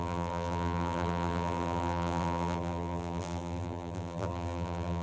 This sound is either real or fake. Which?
fake